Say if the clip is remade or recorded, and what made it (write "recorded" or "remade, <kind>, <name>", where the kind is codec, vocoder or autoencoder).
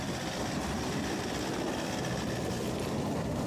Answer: recorded